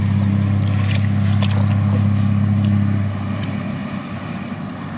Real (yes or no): yes